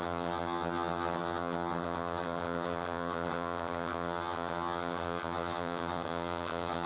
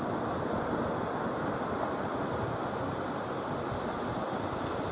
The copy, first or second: first